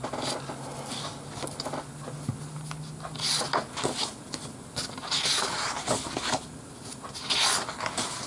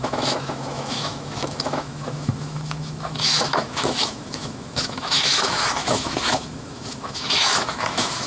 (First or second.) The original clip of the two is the first